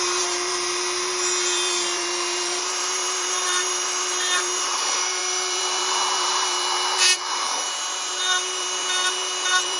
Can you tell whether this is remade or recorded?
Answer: remade